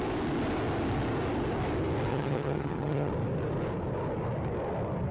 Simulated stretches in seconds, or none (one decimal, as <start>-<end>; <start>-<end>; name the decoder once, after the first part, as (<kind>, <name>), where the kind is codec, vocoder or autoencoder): 2.1-3.1 (vocoder, HiFi-GAN)

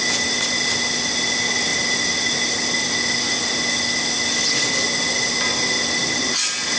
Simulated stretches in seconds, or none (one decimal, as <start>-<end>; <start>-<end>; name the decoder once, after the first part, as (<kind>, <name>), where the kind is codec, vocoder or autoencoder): none

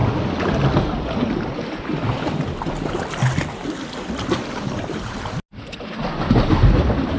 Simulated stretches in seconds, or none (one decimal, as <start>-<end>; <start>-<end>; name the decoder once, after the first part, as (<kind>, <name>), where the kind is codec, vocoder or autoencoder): none

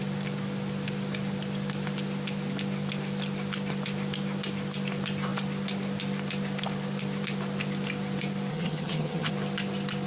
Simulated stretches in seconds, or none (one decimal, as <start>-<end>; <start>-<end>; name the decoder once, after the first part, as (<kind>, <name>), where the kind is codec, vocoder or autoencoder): 8.5-9.3 (vocoder, HiFi-GAN)

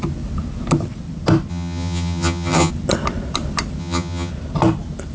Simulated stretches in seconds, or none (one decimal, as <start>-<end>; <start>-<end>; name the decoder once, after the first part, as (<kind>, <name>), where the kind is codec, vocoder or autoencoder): 1.5-2.7 (vocoder, HiFi-GAN); 3.8-4.3